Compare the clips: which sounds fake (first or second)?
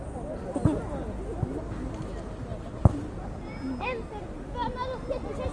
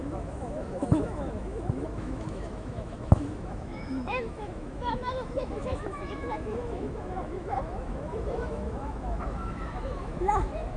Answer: second